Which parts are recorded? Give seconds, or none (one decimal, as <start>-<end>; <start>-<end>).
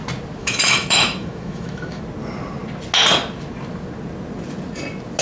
0.0-0.4; 2.0-5.2